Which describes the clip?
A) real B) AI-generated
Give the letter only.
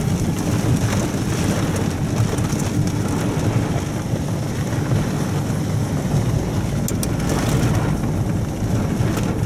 A